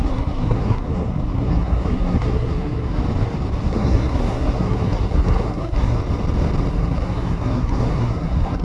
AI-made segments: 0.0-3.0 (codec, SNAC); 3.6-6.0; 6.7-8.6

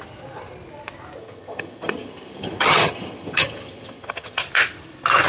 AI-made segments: 1.2-4.4 (vocoder, HiFi-GAN)

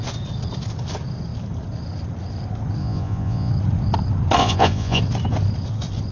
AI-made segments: 2.8-3.5 (vocoder, Vocos); 4.4-5.0